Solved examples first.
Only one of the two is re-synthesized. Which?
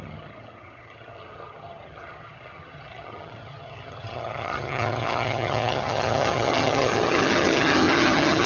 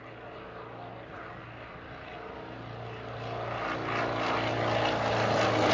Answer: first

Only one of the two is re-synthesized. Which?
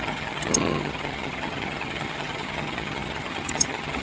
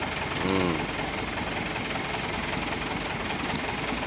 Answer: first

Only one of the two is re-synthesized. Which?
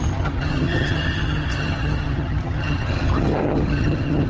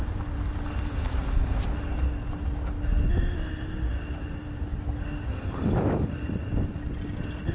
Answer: first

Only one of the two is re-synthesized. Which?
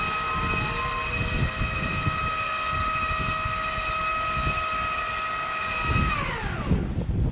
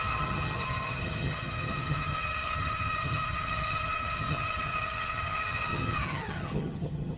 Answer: second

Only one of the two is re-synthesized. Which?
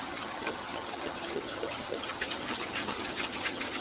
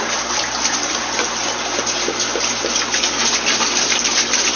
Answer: first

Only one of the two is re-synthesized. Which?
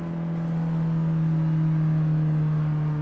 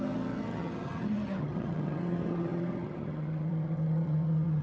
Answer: second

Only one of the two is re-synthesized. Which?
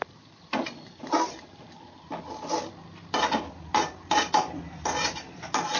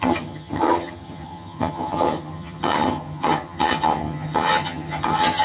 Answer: second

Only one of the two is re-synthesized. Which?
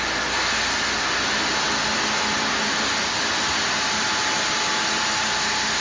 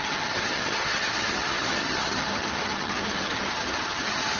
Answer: second